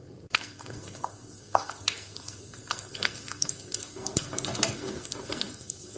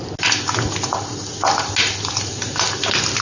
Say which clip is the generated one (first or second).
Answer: first